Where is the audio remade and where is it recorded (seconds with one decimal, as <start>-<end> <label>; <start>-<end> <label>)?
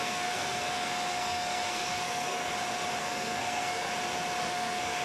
0.0-2.5 remade; 2.5-3.0 recorded; 3.0-3.9 remade; 3.9-4.4 recorded; 4.4-5.0 remade